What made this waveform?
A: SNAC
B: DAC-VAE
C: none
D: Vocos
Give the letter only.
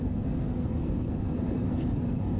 A